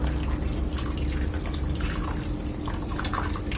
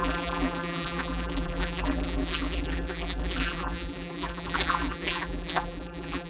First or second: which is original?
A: first